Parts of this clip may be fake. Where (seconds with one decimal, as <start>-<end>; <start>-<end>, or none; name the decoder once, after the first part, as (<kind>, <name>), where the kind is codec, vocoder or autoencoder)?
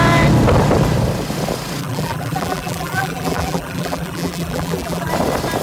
1.8-5.1 (vocoder, BigVGAN v2)